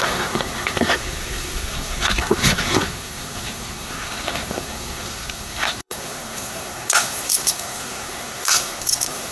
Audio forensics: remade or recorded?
remade